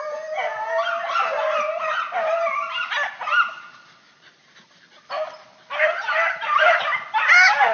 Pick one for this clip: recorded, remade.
recorded